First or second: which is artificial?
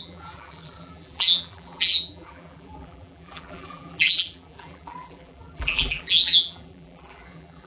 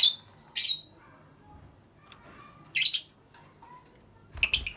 first